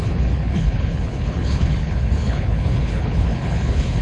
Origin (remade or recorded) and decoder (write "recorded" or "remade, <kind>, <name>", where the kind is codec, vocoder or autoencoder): remade, codec, HILCodec